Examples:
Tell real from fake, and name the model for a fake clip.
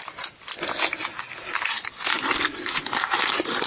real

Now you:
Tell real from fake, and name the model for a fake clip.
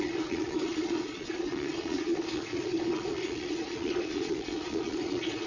fake, vocoder, Vocos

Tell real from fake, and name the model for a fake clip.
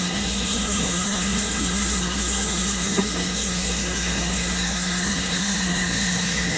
fake, codec, SNAC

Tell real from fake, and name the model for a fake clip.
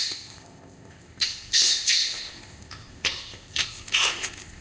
fake, codec, ZipCodec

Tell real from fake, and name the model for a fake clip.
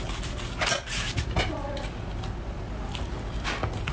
real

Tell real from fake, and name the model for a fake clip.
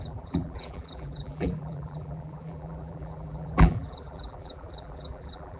fake, vocoder, BigVGAN v2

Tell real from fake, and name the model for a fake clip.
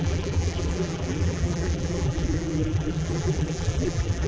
fake, vocoder, BigVGAN v2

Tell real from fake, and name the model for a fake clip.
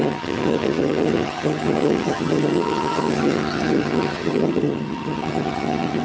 fake, vocoder, HiFi-GAN